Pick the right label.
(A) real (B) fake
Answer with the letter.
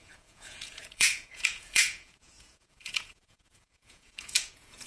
B